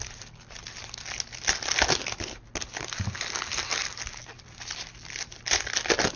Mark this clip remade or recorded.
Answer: recorded